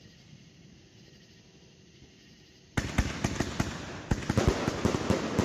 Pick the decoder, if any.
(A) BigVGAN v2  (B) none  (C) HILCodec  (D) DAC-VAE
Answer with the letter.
B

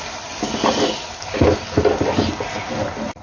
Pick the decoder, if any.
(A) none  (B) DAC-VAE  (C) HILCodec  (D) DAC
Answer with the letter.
A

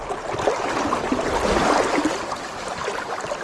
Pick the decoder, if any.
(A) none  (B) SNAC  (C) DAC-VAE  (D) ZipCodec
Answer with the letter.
A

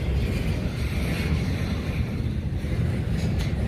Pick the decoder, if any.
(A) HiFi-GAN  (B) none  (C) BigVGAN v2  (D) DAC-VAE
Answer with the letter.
B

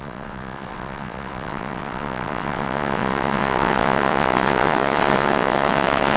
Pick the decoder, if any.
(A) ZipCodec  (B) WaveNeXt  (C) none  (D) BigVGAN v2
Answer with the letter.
B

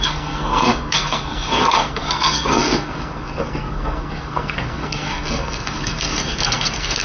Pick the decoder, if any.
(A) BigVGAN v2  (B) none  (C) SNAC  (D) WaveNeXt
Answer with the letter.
C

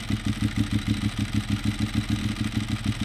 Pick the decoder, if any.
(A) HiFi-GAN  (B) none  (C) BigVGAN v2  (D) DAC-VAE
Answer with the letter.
B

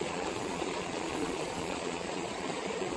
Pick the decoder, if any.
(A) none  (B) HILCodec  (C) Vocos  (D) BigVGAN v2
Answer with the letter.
C